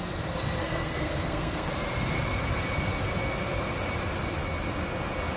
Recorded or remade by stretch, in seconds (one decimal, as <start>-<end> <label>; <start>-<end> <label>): 0.0-0.6 recorded; 0.6-1.7 remade; 1.7-5.4 recorded